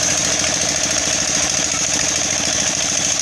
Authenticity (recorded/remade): remade